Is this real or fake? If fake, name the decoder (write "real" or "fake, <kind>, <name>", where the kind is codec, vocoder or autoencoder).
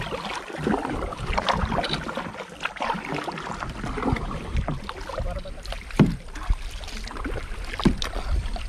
real